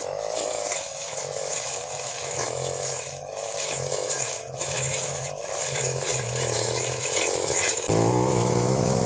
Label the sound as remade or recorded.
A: remade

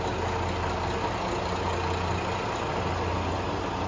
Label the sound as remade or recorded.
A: recorded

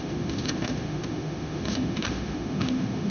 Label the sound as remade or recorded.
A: remade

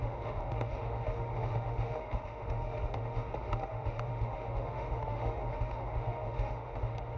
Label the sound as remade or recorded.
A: remade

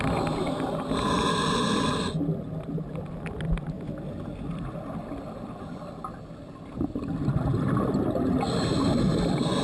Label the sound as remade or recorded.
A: recorded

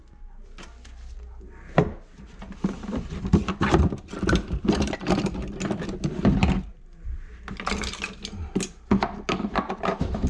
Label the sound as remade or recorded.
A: recorded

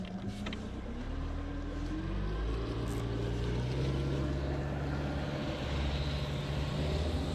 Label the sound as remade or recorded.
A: recorded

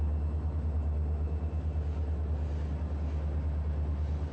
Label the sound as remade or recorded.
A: recorded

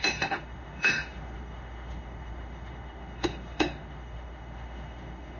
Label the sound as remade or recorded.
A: remade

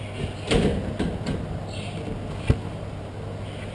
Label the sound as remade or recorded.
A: recorded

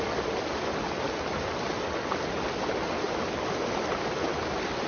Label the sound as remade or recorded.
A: recorded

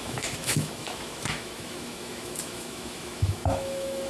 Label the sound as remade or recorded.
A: remade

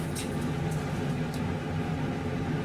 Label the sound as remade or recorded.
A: recorded